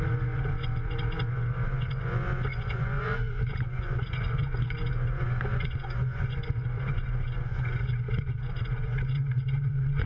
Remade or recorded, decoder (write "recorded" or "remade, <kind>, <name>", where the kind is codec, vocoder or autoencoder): remade, vocoder, Vocos